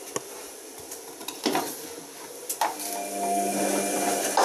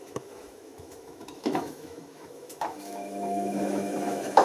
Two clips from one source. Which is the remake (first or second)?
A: second